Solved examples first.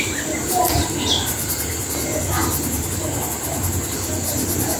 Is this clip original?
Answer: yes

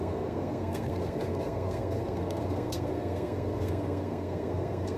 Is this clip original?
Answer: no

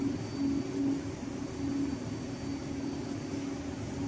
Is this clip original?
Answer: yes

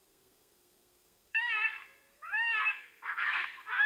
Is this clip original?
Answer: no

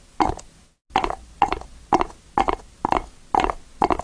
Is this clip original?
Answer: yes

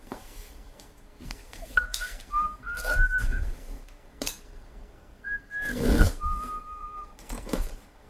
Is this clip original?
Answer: no